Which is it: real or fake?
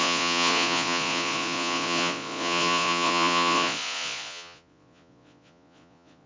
fake